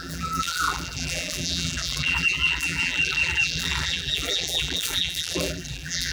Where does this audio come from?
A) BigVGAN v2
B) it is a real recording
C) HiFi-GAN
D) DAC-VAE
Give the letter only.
A